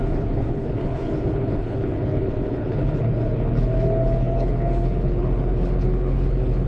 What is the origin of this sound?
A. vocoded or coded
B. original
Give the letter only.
A